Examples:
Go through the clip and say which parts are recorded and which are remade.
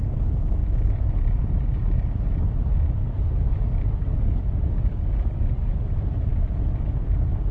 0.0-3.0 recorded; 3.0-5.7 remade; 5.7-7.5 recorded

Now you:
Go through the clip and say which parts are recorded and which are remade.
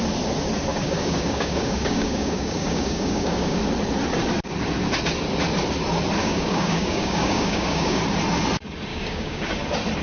0.0-0.7 recorded; 0.7-3.6 remade; 3.6-6.2 recorded; 6.2-8.0 remade; 8.0-8.9 recorded; 8.9-9.5 remade; 9.5-10.0 recorded